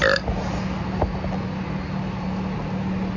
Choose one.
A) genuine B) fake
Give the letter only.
A